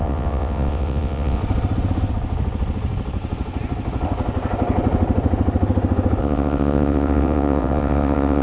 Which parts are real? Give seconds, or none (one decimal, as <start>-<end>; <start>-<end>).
1.4-6.2